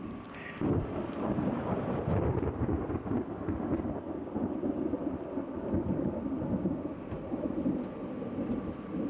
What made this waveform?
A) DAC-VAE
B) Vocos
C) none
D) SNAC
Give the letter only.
C